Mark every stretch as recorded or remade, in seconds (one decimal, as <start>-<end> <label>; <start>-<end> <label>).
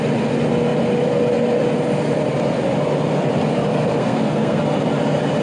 0.0-4.0 recorded; 4.0-4.6 remade; 4.6-5.4 recorded